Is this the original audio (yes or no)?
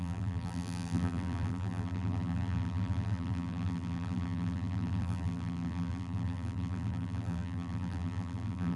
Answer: no